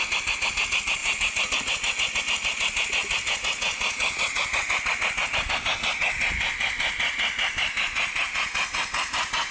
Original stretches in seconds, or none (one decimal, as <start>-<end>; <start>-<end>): 0.0-9.5